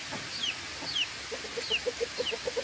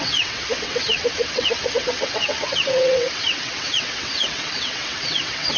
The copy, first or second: second